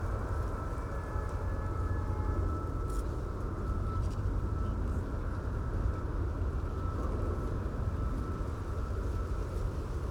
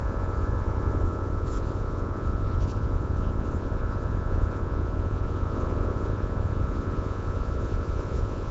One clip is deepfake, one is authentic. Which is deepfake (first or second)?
second